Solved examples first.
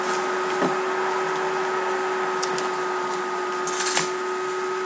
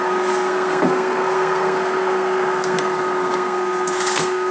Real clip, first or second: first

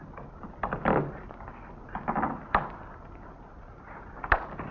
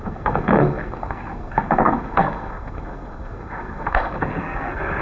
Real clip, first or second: first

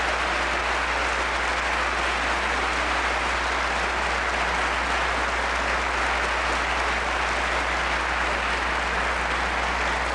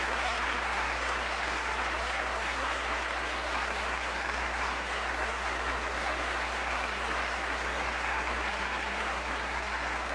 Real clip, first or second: first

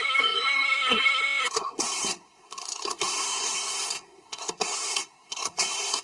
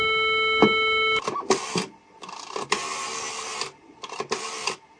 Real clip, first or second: second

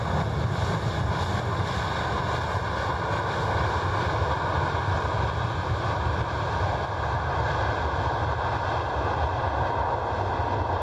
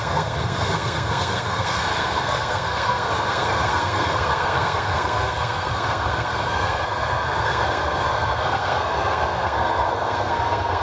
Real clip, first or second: first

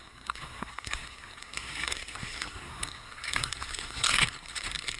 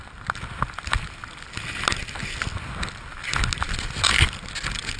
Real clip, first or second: second